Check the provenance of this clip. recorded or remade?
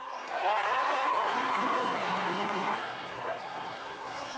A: remade